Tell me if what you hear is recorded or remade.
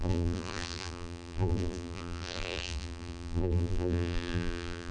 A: remade